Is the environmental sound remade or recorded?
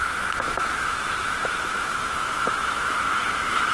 remade